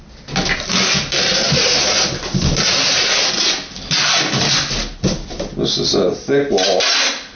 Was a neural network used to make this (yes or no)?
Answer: no